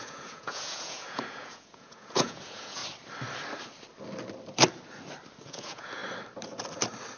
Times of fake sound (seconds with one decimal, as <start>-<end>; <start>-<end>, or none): 0.0-2.8; 5.5-6.0